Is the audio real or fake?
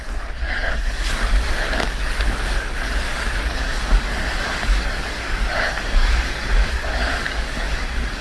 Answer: fake